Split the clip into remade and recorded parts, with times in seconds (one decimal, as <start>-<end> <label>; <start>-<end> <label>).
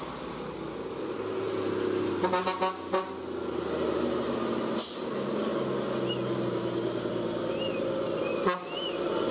0.0-9.3 recorded